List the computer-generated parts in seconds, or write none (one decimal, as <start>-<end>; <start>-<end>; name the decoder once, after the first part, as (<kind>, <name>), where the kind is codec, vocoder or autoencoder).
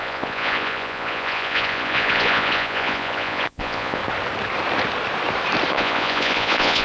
0.0-4.0 (vocoder, Vocos); 5.7-6.8